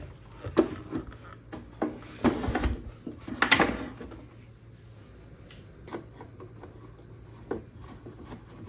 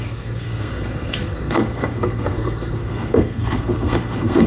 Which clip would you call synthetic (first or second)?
second